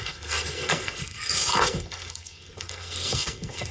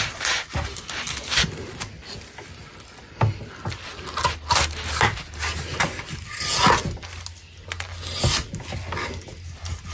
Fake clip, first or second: first